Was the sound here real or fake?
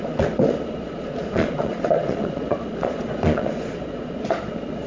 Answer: fake